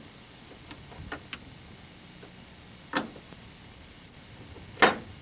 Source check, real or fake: real